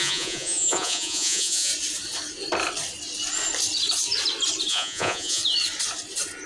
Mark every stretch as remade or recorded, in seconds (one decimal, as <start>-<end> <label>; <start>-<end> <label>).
0.0-1.7 remade; 1.7-4.7 recorded; 4.7-5.4 remade; 5.4-6.5 recorded